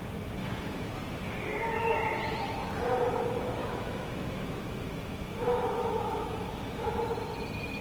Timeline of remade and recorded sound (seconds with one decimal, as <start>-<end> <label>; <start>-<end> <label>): 0.0-0.4 recorded; 0.4-0.9 remade; 0.9-3.6 recorded; 3.6-6.9 remade; 6.9-7.8 recorded